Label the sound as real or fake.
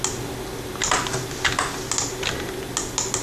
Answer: real